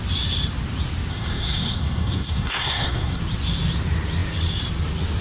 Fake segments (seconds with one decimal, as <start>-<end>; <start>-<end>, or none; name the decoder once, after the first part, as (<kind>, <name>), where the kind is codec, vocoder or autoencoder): 1.1-3.2 (codec, SNAC)